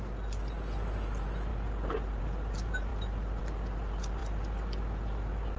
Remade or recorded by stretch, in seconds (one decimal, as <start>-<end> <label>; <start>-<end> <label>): 0.0-5.6 recorded